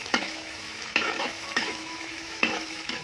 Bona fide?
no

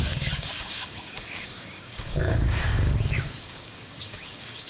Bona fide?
no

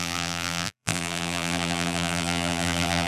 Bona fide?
no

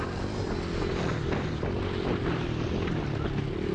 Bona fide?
yes